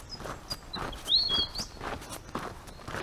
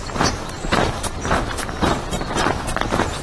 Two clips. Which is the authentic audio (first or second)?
first